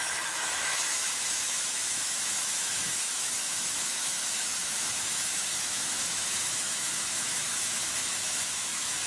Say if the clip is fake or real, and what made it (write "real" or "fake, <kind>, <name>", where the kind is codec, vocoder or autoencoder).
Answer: fake, autoencoder, DAC-VAE